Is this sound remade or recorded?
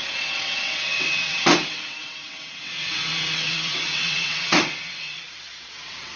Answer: remade